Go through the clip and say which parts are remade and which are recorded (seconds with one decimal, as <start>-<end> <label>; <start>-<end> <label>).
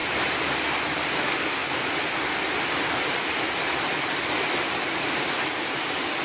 0.0-1.6 remade; 1.6-2.8 recorded; 2.8-3.2 remade; 3.2-4.6 recorded; 4.6-6.2 remade